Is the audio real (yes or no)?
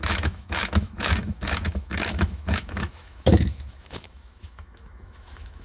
no